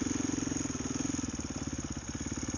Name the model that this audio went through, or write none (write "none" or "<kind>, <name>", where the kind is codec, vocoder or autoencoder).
none